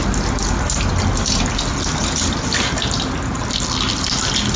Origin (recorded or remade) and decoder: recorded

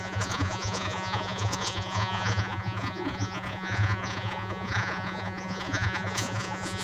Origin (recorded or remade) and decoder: remade, vocoder, Vocos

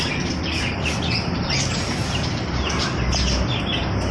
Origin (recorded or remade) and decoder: recorded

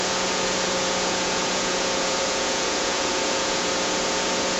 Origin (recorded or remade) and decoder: remade, vocoder, Vocos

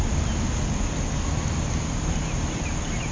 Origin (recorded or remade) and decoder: recorded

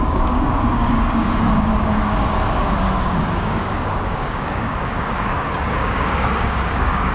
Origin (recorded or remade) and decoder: remade, codec, DAC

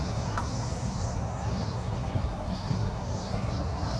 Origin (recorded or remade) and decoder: remade, codec, SNAC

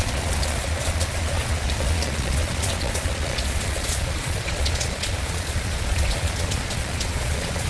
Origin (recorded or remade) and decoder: remade, vocoder, Vocos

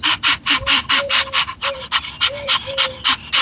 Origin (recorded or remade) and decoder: remade, vocoder, BigVGAN v2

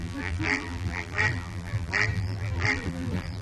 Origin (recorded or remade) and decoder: remade, vocoder, BigVGAN v2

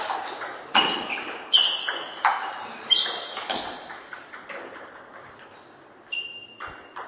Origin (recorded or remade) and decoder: recorded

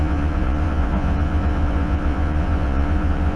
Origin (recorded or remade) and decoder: remade, vocoder, Vocos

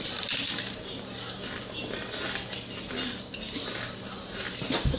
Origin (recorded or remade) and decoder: recorded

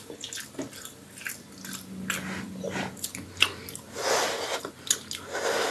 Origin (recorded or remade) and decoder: recorded